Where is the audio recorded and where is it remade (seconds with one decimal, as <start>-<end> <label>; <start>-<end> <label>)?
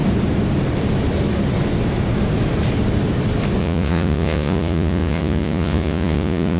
0.0-3.6 recorded; 3.6-6.6 remade